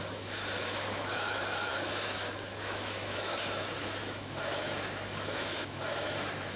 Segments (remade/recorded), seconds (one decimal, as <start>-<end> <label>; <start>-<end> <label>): 0.0-6.6 remade